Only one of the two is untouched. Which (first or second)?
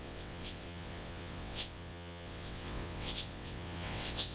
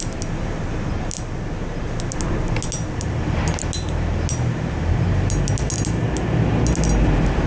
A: second